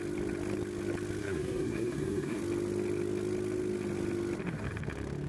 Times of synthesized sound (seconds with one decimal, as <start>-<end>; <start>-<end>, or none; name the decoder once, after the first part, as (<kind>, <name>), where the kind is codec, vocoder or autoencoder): 1.2-2.4 (codec, SNAC)